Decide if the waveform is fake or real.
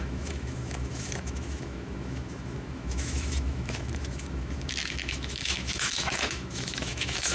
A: fake